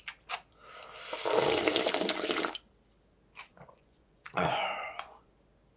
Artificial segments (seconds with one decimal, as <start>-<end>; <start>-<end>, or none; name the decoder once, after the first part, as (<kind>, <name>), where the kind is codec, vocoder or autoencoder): 3.5-5.3 (vocoder, Vocos)